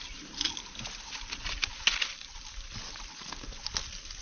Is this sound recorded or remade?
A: recorded